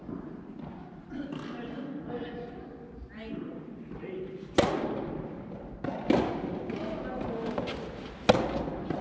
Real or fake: real